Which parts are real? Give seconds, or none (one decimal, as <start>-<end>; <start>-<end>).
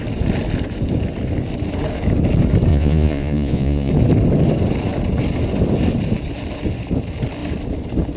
0.0-2.7; 3.9-8.2